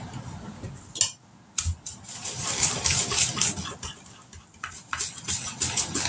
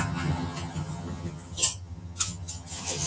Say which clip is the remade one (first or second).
second